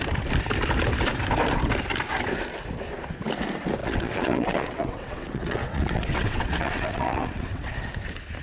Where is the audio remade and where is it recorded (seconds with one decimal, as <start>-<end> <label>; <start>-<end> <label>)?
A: 0.0-3.8 recorded; 3.8-7.7 remade; 7.7-8.4 recorded